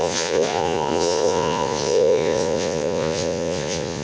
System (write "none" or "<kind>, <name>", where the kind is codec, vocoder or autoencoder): vocoder, Vocos